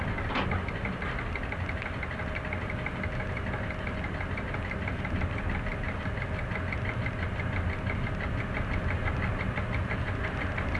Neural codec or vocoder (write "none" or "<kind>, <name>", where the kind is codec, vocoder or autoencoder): none